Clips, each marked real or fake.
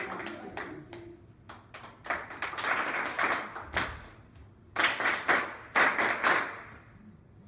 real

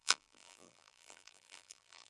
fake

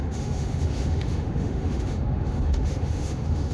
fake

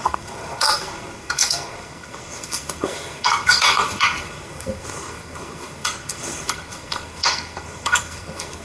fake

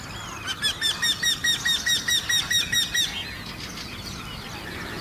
real